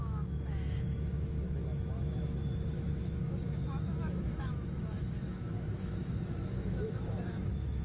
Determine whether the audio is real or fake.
fake